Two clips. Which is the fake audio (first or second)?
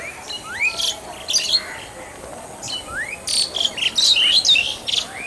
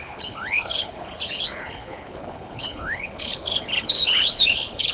second